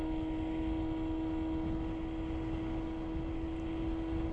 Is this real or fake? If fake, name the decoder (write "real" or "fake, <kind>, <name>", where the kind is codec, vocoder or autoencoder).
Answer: real